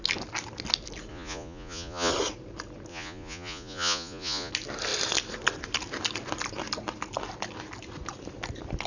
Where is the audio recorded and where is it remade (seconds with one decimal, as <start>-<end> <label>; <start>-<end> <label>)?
0.0-1.1 recorded; 1.1-2.1 remade; 2.1-2.9 recorded; 2.9-4.5 remade; 4.5-8.9 recorded